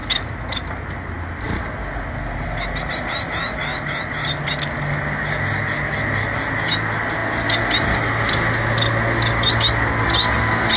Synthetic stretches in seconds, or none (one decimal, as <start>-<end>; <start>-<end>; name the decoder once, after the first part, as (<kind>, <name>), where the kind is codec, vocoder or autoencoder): none

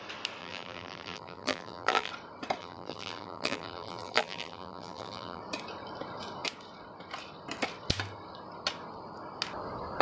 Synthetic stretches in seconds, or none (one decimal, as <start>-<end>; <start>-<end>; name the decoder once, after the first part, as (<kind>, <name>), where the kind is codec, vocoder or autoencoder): 0.4-2.1 (vocoder, BigVGAN v2); 2.6-5.4